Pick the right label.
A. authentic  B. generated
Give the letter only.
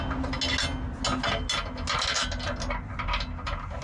A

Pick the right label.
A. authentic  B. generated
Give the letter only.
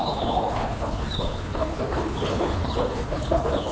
B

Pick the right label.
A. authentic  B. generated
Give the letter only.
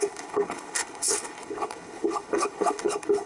B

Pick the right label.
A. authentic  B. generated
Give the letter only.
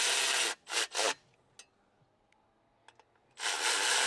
A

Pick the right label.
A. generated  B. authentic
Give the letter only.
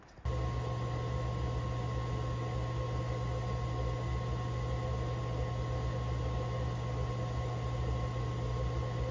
B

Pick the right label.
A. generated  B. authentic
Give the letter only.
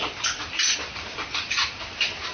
B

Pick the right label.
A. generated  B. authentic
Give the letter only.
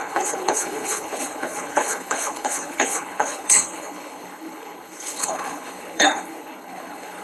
A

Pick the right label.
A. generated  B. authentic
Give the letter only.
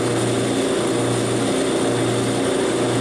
B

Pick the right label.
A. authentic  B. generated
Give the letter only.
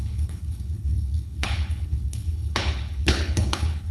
B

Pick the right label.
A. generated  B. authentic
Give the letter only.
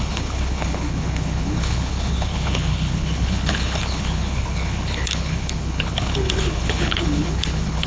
A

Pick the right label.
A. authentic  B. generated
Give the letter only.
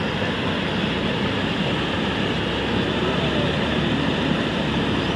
A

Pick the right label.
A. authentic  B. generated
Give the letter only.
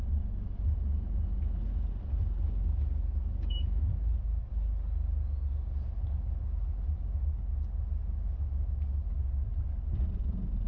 A